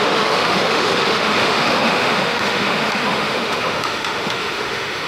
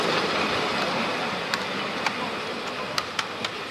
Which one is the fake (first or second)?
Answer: first